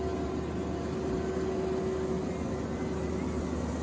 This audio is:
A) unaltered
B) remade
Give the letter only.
A